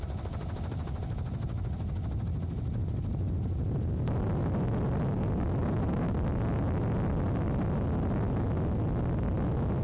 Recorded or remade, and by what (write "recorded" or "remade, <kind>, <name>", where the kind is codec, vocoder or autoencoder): recorded